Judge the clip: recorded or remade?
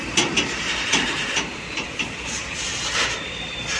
remade